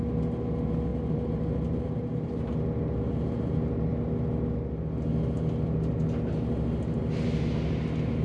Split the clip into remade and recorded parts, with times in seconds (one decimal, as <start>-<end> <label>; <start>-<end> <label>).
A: 0.0-0.9 recorded; 0.9-2.5 remade; 2.5-8.2 recorded